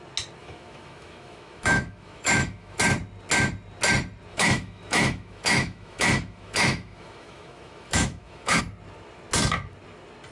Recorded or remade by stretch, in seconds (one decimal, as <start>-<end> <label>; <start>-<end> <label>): 0.0-0.4 recorded; 0.4-2.8 remade; 2.8-4.3 recorded; 4.3-8.6 remade; 8.6-10.3 recorded